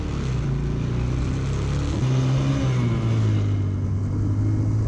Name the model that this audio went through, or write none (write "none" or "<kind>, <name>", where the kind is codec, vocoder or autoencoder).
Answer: none